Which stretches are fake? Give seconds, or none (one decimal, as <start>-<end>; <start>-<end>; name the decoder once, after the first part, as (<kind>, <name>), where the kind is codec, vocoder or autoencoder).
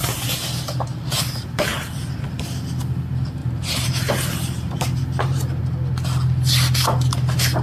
3.4-5.6 (vocoder, BigVGAN v2)